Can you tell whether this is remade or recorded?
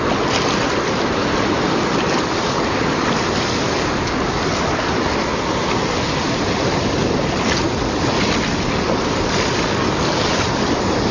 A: recorded